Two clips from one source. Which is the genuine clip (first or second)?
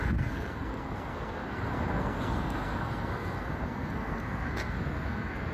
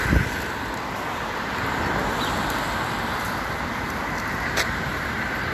second